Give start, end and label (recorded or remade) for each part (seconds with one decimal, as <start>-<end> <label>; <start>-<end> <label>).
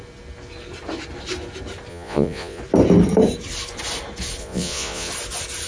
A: 0.0-1.9 recorded; 1.9-2.6 remade; 2.6-4.4 recorded; 4.4-5.1 remade; 5.1-5.7 recorded